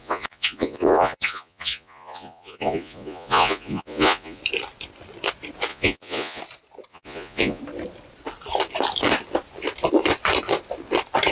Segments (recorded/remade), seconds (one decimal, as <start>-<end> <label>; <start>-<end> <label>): 0.0-4.4 remade; 4.4-5.7 recorded; 5.7-6.4 remade; 6.4-6.9 recorded; 6.9-7.6 remade; 7.6-11.3 recorded